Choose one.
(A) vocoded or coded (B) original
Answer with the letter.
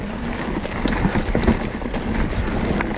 B